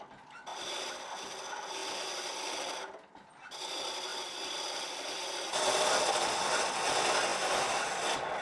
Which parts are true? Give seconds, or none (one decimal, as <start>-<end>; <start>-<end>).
0.0-0.5; 1.1-4.1; 6.0-7.3; 7.8-8.4

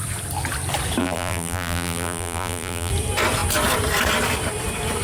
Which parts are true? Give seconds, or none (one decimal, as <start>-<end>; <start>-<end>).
0.0-1.0; 2.9-5.0

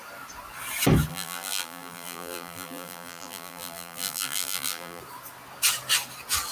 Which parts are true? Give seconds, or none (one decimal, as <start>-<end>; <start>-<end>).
0.0-1.1; 5.0-6.5

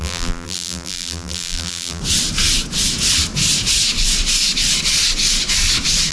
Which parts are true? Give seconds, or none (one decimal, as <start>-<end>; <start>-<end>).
2.0-6.1